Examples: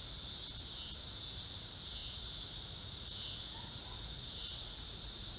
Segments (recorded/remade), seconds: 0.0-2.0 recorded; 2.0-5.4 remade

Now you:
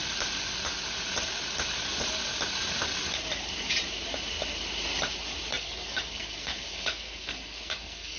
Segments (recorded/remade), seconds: 0.0-5.5 recorded; 5.5-8.2 remade

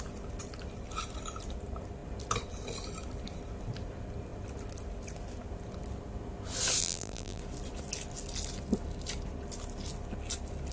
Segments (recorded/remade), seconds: 0.0-6.8 recorded; 6.8-7.4 remade; 7.4-10.7 recorded

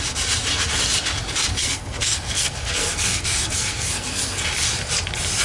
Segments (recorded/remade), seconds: 0.0-1.5 recorded; 1.5-4.4 remade; 4.4-5.4 recorded

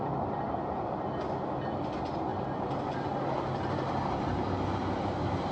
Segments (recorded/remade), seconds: 0.0-5.5 recorded

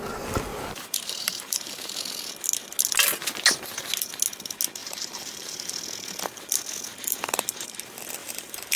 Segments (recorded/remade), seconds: 0.0-0.5 recorded; 0.5-2.0 remade; 2.0-4.8 recorded; 4.8-5.7 remade; 5.7-8.2 recorded; 8.2-8.8 remade

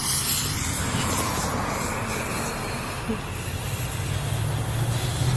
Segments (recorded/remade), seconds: 0.0-5.4 recorded

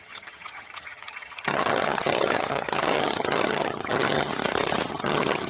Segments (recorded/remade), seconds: 0.0-4.3 remade; 4.3-4.9 recorded; 4.9-5.5 remade